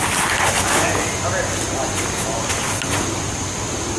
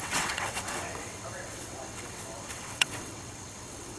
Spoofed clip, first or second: second